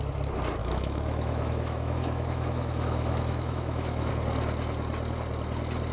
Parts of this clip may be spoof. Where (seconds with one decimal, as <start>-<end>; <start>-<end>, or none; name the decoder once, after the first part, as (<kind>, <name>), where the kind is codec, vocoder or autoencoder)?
0.6-4.1 (autoencoder, DAC-VAE)